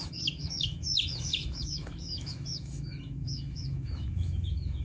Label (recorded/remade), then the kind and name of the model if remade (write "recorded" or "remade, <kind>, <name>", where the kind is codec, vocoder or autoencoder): remade, autoencoder, DAC-VAE